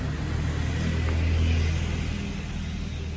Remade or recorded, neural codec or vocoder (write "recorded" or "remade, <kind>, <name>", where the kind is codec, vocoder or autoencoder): recorded